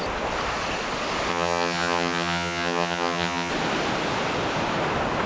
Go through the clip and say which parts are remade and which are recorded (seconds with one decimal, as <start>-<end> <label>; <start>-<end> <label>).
0.0-1.3 recorded; 1.3-3.5 remade; 3.5-5.3 recorded